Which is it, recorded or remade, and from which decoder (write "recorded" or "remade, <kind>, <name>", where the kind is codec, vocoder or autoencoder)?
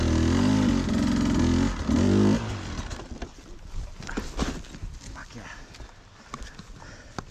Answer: recorded